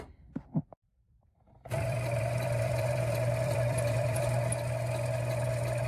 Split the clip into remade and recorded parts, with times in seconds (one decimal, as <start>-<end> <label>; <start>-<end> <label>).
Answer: 0.0-0.7 recorded; 0.7-4.2 remade; 4.2-5.9 recorded